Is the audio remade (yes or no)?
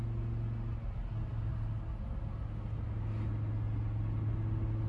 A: no